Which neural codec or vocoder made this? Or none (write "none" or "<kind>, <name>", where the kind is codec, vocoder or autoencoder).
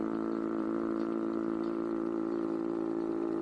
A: vocoder, BigVGAN v2